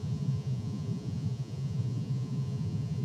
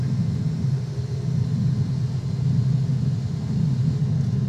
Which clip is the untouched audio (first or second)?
second